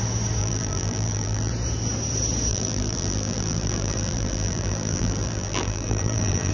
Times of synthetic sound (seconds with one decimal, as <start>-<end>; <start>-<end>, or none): 0.4-1.5; 2.5-6.5

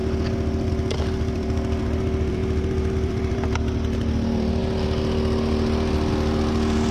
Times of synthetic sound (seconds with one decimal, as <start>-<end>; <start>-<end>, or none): 0.7-2.4; 2.9-4.6; 6.1-6.9